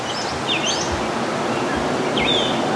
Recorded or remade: recorded